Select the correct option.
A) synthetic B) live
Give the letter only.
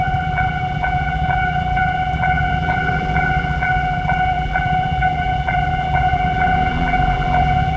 A